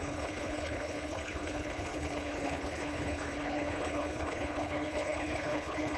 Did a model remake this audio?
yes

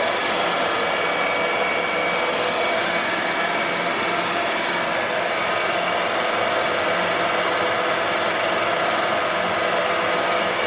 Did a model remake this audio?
no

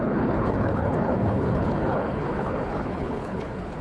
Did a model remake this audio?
yes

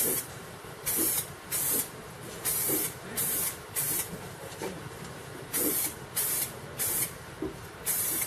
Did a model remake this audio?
yes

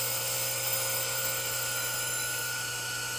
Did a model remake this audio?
yes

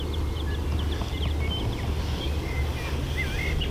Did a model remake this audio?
no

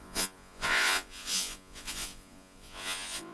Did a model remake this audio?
yes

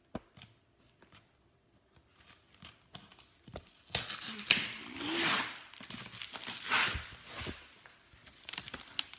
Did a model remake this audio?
no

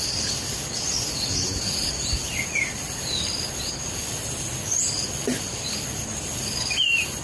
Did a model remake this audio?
yes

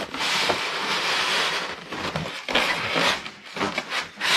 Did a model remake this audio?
no